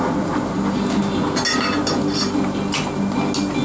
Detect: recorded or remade recorded